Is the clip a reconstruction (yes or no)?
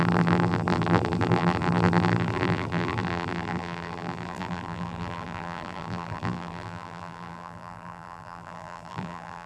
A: yes